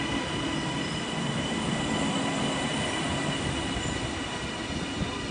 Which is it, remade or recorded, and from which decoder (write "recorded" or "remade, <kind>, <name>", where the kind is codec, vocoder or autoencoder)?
recorded